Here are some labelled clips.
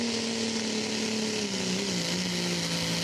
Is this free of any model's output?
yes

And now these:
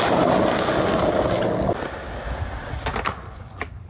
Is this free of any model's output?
yes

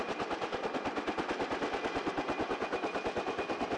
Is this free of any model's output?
yes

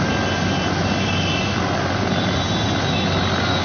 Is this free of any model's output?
yes